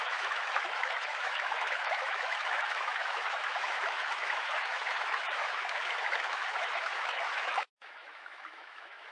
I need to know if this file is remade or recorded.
remade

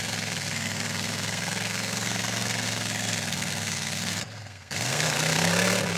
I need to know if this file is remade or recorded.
remade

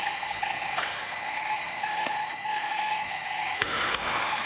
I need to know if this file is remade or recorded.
remade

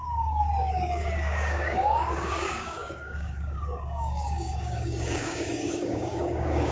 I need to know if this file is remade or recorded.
remade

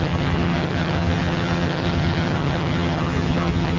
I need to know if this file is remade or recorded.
remade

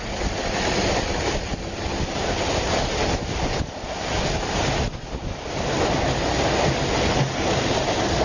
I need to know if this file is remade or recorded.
recorded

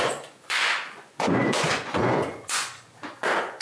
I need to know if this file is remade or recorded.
remade